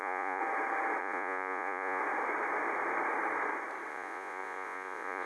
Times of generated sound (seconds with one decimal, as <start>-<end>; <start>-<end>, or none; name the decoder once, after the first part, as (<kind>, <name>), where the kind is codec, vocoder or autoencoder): 0.0-0.4 (vocoder, Vocos); 1.0-2.0; 3.9-5.3